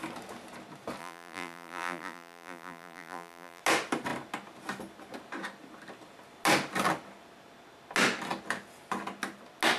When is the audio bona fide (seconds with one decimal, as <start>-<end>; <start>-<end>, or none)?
0.0-1.0; 3.6-9.8